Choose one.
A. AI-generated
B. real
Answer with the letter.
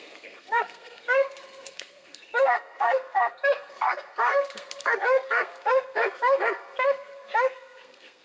A